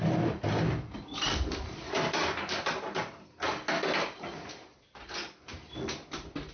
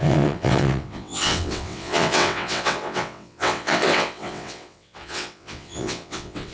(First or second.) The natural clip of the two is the first